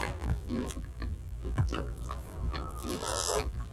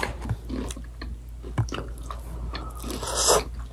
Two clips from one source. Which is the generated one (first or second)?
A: first